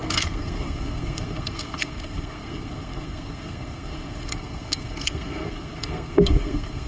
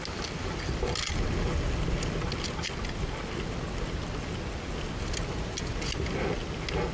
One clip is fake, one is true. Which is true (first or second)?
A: second